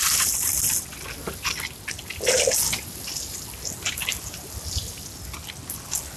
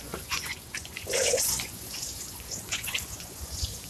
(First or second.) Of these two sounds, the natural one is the first